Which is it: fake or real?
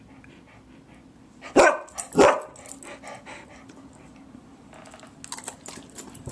real